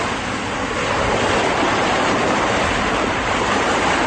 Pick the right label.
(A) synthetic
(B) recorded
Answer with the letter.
B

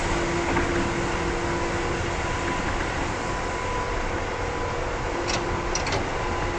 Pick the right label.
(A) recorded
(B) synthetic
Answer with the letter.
A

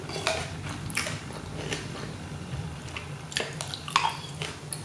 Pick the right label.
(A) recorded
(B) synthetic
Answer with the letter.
A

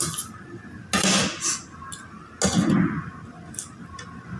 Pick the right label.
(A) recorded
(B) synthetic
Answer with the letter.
A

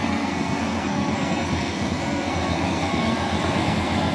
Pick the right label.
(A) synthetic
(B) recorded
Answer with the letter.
A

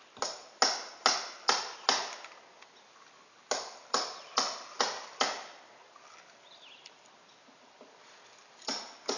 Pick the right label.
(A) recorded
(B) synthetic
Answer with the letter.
A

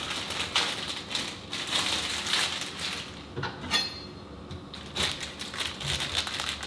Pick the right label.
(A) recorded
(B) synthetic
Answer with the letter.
A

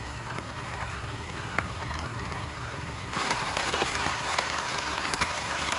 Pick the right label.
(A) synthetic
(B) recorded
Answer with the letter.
A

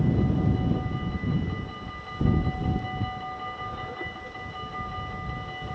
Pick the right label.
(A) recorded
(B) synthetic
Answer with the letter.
A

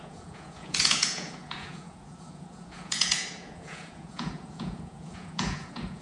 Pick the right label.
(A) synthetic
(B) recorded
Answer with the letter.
A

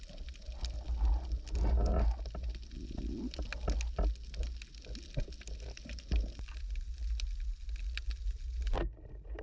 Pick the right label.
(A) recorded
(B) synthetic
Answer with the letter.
A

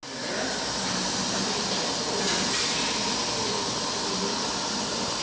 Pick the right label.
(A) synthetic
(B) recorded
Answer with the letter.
B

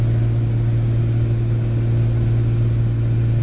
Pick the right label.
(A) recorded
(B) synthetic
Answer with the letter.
A